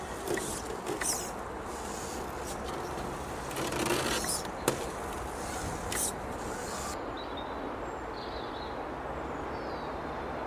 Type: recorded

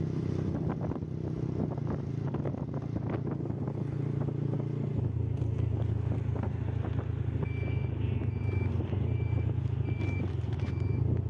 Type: recorded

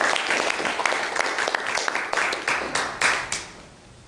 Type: recorded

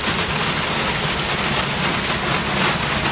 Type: recorded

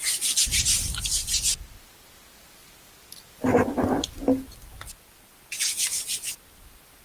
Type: recorded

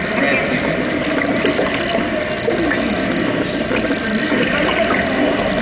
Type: recorded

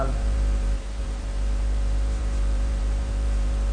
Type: remade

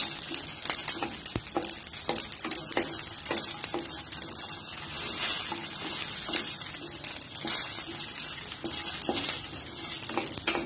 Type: recorded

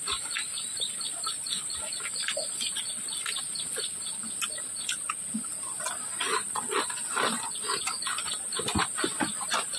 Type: recorded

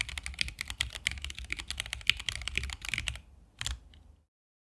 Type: recorded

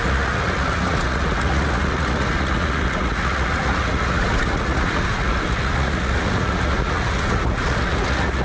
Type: remade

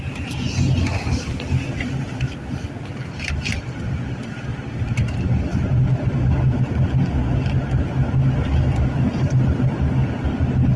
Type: recorded